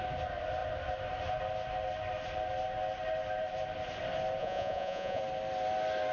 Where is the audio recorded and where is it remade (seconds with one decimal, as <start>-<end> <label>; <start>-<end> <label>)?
0.0-4.4 recorded; 4.4-5.2 remade; 5.2-6.1 recorded